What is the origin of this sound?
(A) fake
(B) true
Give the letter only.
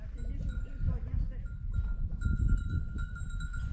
B